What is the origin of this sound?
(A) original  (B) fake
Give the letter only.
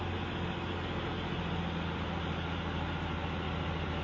A